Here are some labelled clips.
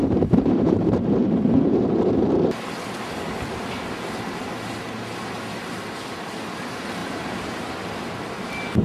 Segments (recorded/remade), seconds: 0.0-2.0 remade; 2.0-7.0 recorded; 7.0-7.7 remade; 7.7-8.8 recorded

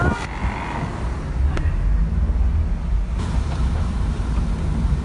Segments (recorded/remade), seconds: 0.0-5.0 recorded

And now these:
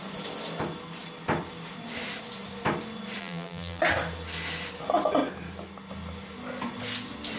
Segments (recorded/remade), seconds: 0.0-3.2 recorded; 3.2-3.8 remade; 3.8-7.4 recorded

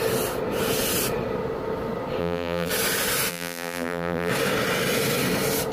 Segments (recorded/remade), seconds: 0.0-2.2 recorded; 2.2-2.7 remade; 2.7-3.3 recorded; 3.3-4.3 remade; 4.3-5.7 recorded

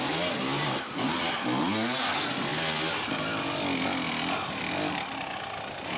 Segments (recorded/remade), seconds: 0.0-0.5 recorded; 0.5-1.2 remade; 1.2-6.0 recorded

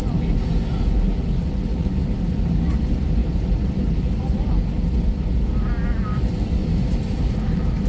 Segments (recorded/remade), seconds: 0.0-1.7 recorded; 1.7-2.3 remade; 2.3-3.2 recorded; 3.2-4.5 remade; 4.5-6.6 recorded; 6.6-7.5 remade; 7.5-7.9 recorded